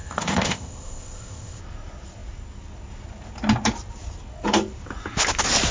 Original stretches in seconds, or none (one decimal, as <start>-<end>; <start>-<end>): 1.6-5.7